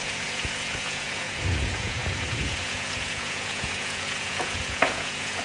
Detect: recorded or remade remade